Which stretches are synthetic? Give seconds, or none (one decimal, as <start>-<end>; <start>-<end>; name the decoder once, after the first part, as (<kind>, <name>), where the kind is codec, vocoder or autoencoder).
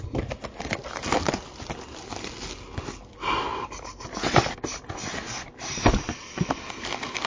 3.5-4.1 (vocoder, BigVGAN v2); 5.0-6.0